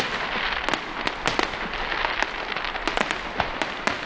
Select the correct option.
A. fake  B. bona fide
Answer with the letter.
B